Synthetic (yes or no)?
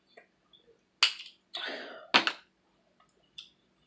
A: no